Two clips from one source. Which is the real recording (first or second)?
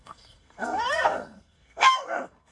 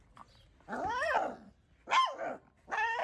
second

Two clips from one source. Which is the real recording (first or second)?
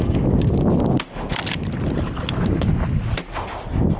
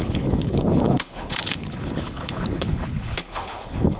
first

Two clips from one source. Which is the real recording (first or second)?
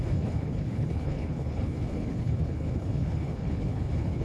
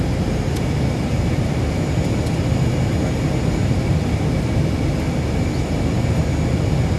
second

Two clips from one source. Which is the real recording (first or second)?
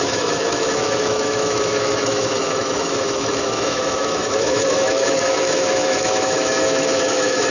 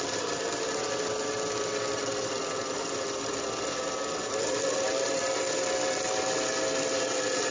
second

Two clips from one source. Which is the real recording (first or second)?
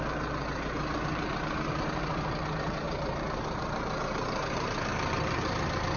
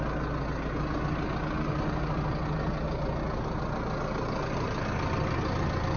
second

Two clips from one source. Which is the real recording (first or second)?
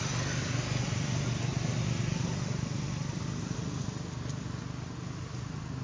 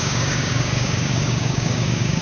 first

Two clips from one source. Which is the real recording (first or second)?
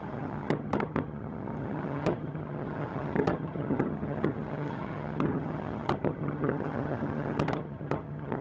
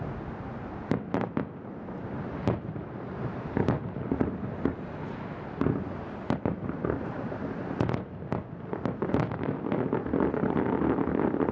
second